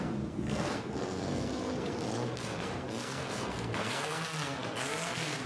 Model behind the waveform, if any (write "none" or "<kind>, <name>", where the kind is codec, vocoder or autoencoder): codec, SNAC